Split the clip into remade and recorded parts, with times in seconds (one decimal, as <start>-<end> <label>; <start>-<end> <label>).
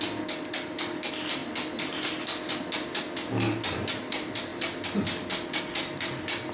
0.0-6.5 recorded